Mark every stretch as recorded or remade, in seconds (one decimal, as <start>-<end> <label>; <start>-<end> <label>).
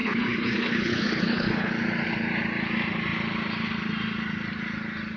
0.0-1.7 remade; 1.7-5.2 recorded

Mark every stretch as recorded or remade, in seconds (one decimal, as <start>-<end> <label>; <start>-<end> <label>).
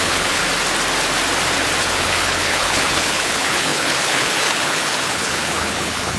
0.0-0.4 remade; 0.4-1.8 recorded; 1.8-6.2 remade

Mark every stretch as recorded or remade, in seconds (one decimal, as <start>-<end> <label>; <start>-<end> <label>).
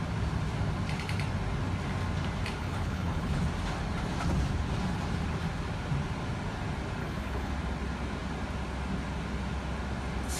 0.0-2.6 recorded; 2.6-3.4 remade; 3.4-7.0 recorded; 7.0-7.5 remade; 7.5-10.4 recorded